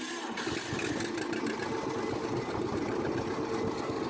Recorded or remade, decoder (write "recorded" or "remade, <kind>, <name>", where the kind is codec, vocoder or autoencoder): recorded